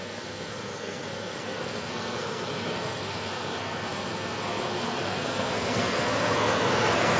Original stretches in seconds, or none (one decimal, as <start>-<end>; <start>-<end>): none